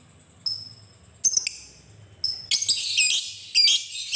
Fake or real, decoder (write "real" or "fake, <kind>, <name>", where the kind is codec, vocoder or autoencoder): real